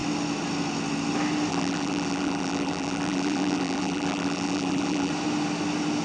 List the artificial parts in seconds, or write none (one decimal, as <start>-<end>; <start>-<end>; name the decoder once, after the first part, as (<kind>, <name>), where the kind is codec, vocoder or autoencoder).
1.5-5.1 (vocoder, BigVGAN v2)